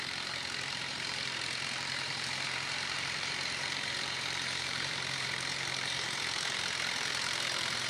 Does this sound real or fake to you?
fake